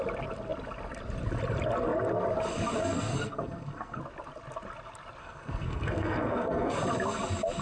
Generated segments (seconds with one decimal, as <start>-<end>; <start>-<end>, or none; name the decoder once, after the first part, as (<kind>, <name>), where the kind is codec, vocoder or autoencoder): 2.8-4.0 (codec, SNAC); 5.2-6.8